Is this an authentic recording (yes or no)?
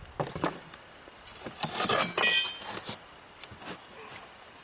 yes